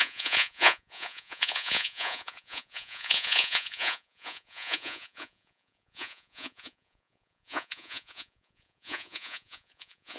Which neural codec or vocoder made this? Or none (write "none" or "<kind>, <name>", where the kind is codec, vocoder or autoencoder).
vocoder, Vocos